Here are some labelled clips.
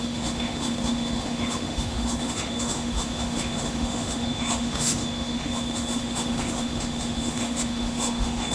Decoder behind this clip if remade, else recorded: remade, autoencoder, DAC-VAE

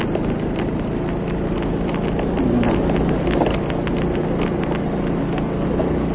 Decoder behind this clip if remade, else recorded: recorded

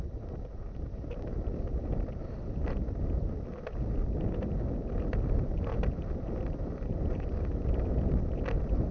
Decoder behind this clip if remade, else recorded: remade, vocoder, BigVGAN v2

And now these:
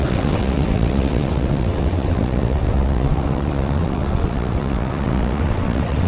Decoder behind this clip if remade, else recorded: remade, vocoder, WaveNeXt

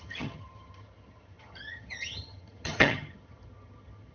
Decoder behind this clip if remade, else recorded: remade, vocoder, HiFi-GAN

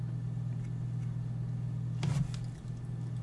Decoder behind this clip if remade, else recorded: recorded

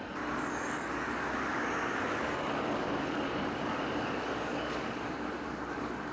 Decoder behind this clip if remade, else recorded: remade, codec, DAC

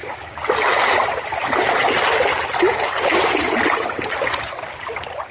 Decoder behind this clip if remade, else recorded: recorded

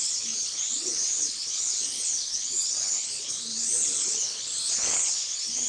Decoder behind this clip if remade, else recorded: remade, codec, HILCodec